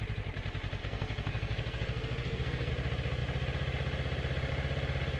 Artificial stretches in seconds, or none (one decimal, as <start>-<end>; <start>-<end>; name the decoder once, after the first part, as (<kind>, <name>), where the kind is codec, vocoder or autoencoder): 0.8-2.7 (codec, SNAC)